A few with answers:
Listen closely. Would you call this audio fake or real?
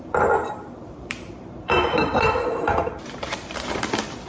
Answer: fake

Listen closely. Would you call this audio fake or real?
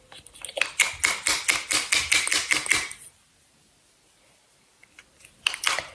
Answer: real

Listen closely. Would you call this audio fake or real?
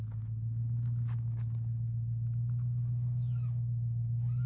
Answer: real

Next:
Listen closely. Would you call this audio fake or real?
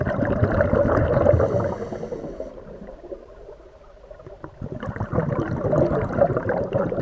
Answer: fake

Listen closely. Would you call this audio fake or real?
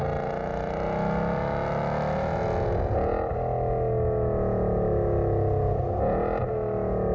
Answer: real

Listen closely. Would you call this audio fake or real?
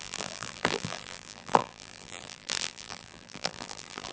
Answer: fake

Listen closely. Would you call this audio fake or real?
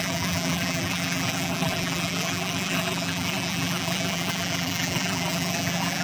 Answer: fake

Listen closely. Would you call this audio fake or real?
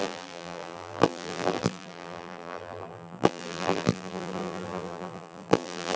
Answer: fake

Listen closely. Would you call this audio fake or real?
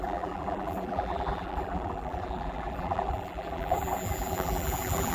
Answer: fake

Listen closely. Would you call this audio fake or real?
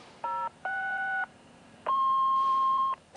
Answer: fake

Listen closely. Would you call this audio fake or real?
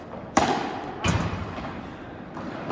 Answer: fake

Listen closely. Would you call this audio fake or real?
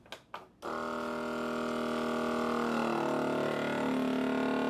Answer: real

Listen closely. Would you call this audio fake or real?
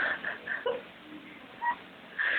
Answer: real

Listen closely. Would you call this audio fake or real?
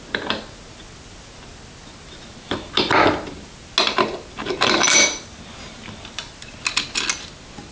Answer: real